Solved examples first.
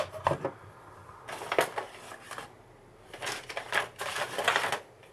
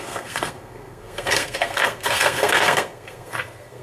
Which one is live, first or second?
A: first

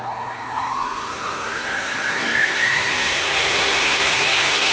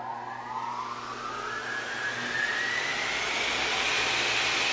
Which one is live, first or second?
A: second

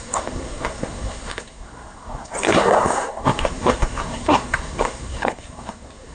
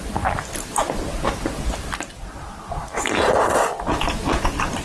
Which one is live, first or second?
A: second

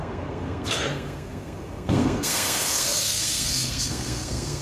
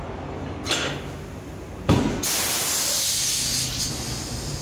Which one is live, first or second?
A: second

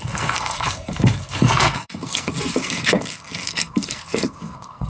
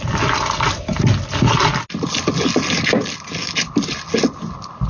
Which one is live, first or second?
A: second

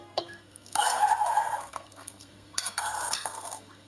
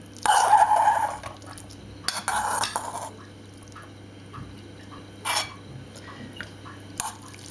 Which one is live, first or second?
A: second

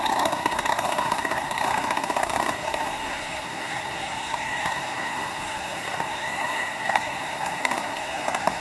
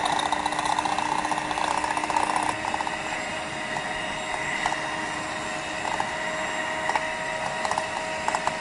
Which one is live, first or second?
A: second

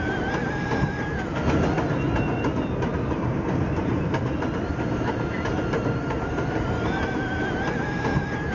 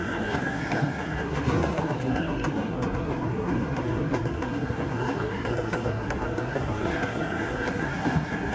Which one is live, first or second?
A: first